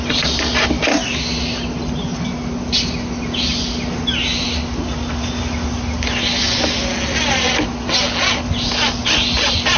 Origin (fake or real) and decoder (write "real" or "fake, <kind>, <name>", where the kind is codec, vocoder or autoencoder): real